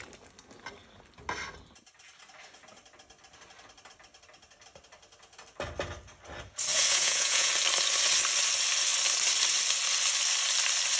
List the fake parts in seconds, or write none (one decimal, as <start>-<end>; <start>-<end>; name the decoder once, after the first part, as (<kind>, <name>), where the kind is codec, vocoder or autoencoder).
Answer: 6.7-7.5 (vocoder, Vocos)